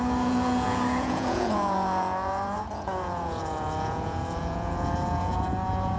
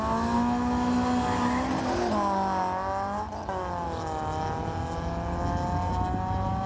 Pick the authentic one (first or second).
second